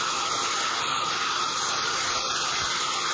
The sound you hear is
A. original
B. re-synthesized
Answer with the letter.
A